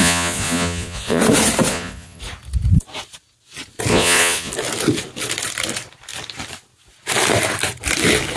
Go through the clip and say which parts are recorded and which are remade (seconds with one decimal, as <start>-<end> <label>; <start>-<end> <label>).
0.0-1.2 remade; 1.2-1.7 recorded; 1.7-2.2 remade; 2.2-3.9 recorded; 3.9-4.5 remade; 4.5-8.4 recorded